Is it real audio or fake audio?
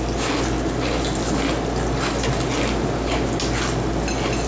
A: real